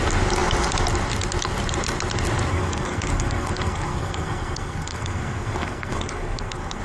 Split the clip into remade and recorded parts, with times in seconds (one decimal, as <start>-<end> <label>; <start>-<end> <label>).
0.0-2.5 recorded; 2.5-6.8 remade